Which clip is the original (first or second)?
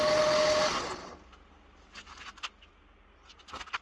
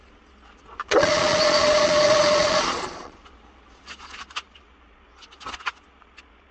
first